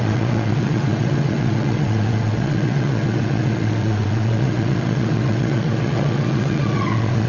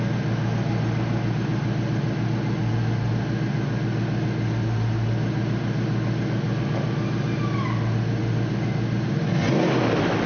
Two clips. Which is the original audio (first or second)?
second